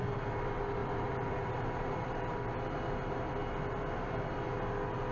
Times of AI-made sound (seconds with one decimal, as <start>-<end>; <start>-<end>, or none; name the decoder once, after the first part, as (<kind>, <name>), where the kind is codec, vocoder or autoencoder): 0.8-2.4 (vocoder, BigVGAN v2)